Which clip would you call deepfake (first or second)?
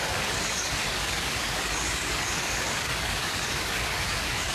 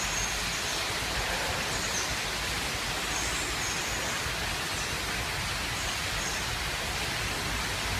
first